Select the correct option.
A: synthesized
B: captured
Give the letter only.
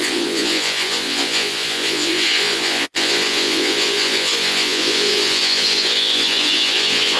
A